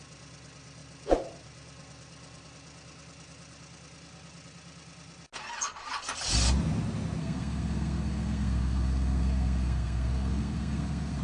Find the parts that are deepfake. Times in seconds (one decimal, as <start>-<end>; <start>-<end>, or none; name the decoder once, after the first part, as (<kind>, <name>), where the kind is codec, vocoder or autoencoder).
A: 7.2-11.2 (codec, SNAC)